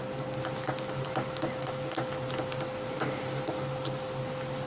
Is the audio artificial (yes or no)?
no